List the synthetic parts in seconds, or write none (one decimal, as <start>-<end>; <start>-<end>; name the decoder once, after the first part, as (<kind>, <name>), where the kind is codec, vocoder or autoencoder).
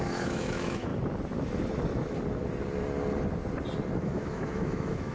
0.0-0.9 (autoencoder, DAC-VAE); 4.0-5.1